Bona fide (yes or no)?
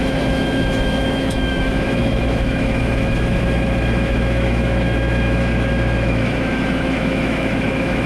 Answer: no